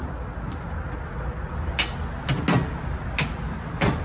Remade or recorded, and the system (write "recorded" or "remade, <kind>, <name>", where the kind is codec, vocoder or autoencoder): recorded